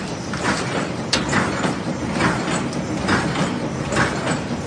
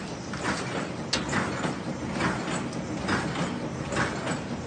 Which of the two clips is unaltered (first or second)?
second